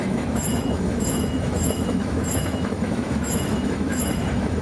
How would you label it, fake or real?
fake